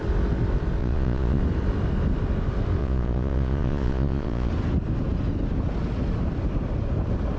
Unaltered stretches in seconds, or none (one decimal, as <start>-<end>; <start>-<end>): 0.0-0.8; 1.4-2.8; 4.5-7.4